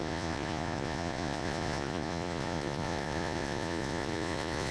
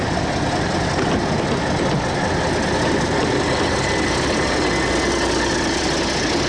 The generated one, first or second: first